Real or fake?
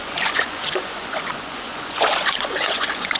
fake